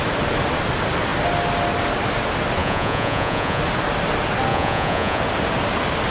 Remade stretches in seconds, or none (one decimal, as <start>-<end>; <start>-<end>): 2.6-3.6; 4.5-5.2